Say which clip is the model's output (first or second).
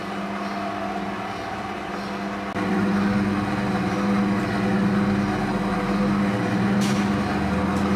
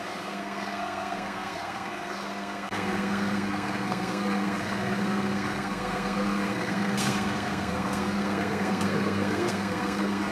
second